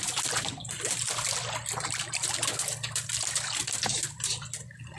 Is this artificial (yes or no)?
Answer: no